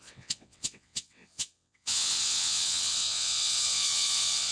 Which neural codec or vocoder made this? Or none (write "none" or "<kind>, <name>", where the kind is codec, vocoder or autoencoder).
vocoder, WaveNeXt